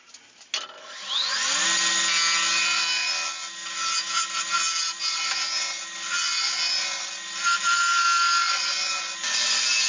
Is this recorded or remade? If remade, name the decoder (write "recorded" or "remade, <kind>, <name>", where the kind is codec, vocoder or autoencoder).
recorded